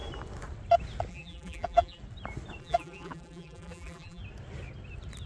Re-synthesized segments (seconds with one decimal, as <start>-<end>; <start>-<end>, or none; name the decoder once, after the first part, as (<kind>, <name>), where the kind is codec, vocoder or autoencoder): 1.1-2.0 (vocoder, BigVGAN v2); 2.6-4.2